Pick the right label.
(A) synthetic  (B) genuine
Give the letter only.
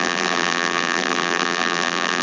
A